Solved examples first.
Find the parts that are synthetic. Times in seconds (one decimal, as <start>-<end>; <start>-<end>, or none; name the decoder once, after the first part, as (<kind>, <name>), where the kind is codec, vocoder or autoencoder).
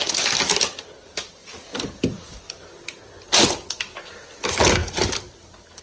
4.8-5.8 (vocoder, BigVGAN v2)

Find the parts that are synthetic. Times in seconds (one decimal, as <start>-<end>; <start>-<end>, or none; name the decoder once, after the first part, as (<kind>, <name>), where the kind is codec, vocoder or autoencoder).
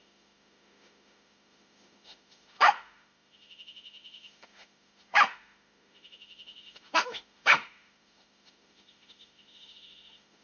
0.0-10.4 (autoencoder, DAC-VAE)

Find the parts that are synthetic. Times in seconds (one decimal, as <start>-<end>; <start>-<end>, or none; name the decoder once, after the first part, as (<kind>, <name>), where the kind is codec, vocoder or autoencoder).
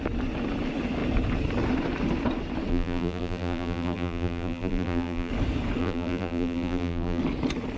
2.7-5.3 (vocoder, BigVGAN v2); 5.8-7.2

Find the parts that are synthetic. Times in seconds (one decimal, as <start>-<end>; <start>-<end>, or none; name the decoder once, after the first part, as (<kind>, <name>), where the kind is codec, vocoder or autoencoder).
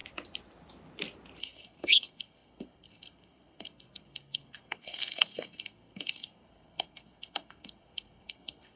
1.4-8.8 (codec, SNAC)